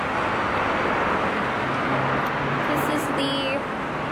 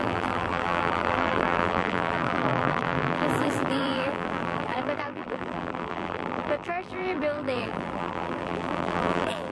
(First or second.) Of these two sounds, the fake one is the second